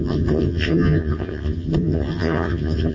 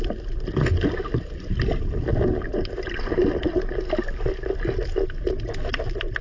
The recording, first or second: second